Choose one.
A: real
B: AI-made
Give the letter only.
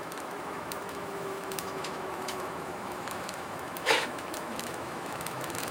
B